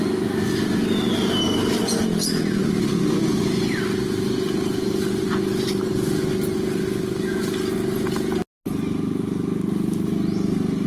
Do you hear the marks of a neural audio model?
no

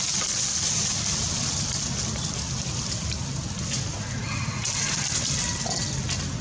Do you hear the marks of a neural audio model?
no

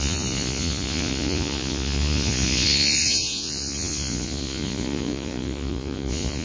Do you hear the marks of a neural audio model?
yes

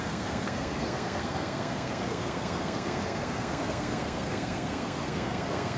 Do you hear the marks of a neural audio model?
yes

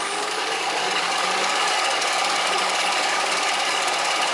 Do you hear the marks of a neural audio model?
yes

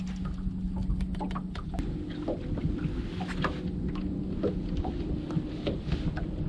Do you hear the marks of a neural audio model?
no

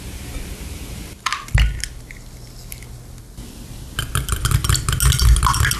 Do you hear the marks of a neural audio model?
no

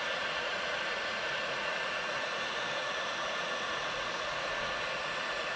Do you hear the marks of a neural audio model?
yes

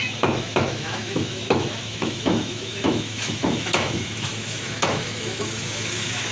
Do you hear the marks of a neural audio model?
yes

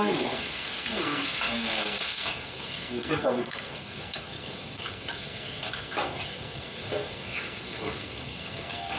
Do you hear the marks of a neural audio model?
yes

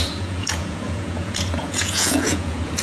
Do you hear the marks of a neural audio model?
yes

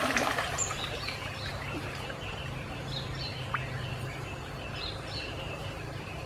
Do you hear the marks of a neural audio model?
no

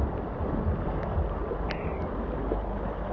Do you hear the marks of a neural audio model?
no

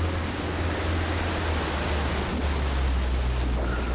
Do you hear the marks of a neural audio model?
no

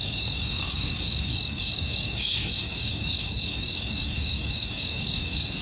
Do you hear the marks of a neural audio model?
yes